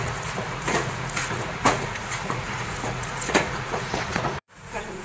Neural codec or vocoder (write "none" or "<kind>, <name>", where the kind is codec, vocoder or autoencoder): vocoder, Vocos